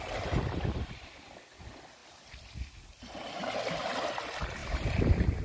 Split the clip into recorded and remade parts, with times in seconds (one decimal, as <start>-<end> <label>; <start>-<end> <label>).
0.0-5.4 recorded